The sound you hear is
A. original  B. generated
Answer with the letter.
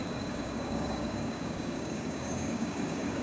B